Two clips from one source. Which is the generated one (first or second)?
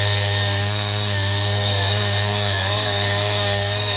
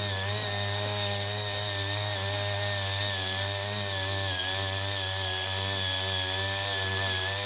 first